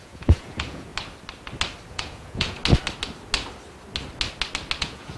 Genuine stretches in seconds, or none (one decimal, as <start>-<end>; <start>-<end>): 0.9-1.9; 2.6-4.8